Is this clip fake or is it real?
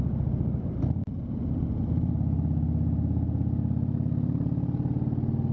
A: real